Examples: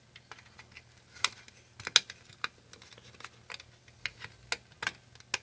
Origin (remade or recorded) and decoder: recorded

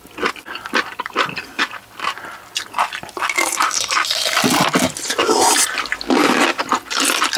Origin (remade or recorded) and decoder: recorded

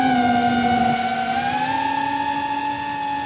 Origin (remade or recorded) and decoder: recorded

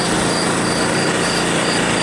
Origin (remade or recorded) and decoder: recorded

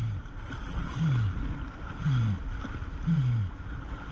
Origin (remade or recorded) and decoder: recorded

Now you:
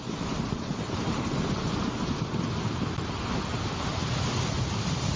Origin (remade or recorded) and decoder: recorded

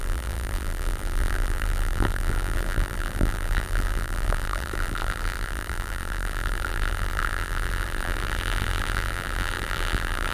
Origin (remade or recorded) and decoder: remade, vocoder, BigVGAN v2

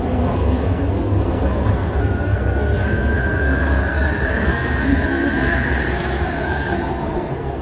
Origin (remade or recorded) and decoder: remade, codec, SNAC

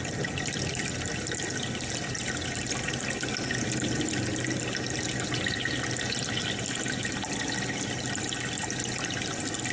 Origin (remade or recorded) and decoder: recorded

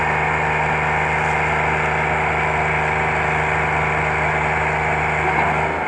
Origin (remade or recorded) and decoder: recorded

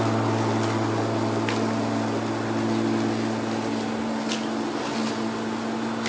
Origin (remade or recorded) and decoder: recorded